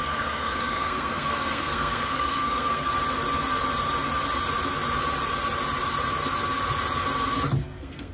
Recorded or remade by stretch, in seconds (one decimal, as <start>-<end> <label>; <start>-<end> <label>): 0.0-2.9 remade; 2.9-7.6 recorded; 7.6-8.1 remade

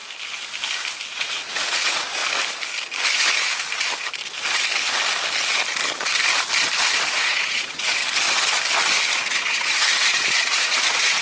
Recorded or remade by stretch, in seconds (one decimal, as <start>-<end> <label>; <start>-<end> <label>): 0.0-1.1 recorded; 1.1-2.2 remade; 2.2-7.1 recorded; 7.1-8.0 remade; 8.0-9.3 recorded; 9.3-11.2 remade